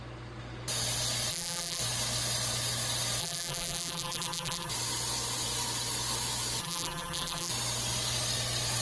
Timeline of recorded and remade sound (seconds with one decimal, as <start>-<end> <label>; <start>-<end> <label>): 0.0-1.3 recorded; 1.3-1.8 remade; 1.8-3.2 recorded; 3.2-4.7 remade; 4.7-6.6 recorded; 6.6-7.5 remade; 7.5-8.8 recorded